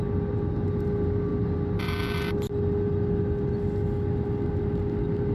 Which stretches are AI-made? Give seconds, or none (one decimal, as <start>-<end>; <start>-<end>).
none